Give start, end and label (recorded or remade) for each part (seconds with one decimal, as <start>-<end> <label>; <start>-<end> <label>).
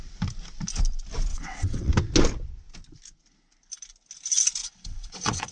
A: 0.0-1.3 recorded; 1.3-1.9 remade; 1.9-4.6 recorded; 4.6-5.5 remade